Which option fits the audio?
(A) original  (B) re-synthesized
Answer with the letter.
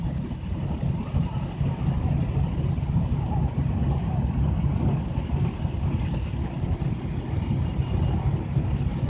A